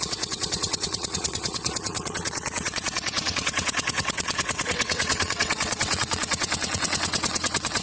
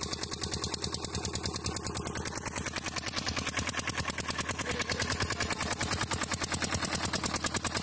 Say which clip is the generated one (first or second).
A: first